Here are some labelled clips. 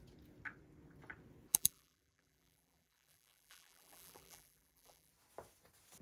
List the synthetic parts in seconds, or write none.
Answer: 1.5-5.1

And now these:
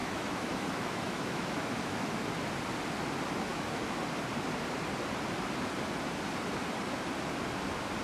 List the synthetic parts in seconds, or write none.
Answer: 0.0-2.1; 3.5-4.0

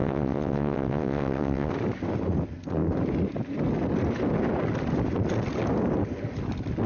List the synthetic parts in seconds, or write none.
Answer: 0.0-1.7

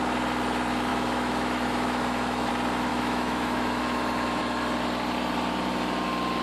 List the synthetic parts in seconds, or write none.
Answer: 0.9-2.5; 2.9-4.4

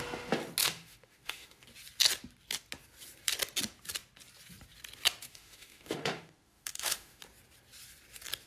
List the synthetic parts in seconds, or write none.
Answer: 0.6-1.6; 5.3-7.2

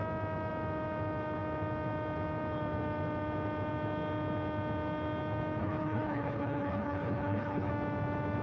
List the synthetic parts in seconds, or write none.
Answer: 5.6-7.7

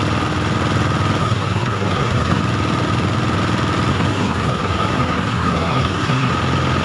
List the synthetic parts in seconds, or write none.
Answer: 1.2-2.4; 3.9-6.3